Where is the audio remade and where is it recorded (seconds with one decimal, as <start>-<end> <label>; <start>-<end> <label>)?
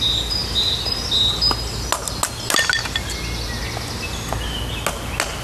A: 0.0-5.4 recorded